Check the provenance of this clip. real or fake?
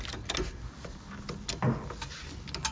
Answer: real